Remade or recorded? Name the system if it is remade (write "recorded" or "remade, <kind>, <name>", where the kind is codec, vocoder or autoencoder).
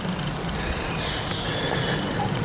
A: recorded